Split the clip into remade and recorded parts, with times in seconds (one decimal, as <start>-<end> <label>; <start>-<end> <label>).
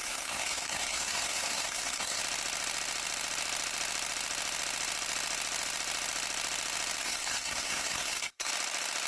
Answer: 0.0-2.2 remade; 2.2-7.0 recorded; 7.0-8.5 remade; 8.5-9.1 recorded